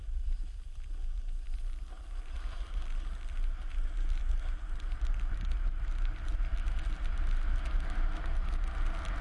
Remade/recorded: recorded